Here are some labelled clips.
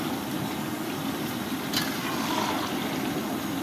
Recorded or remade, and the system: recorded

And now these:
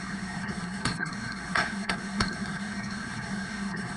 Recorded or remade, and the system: remade, codec, SNAC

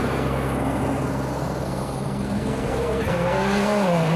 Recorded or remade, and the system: remade, codec, SNAC